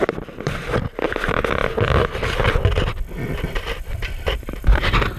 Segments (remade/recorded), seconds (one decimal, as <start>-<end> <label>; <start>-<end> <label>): 0.0-1.6 remade; 1.6-3.9 recorded; 3.9-5.2 remade